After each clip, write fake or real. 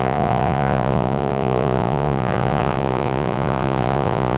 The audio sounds fake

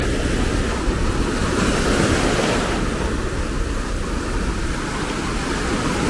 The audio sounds real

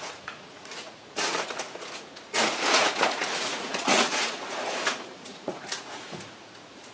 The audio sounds fake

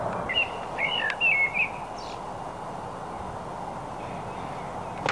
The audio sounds real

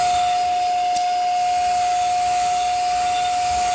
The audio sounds real